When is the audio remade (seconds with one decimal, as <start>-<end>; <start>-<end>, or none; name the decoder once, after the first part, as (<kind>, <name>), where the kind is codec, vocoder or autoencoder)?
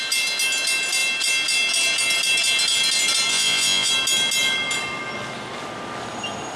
3.3-3.9 (vocoder, Vocos)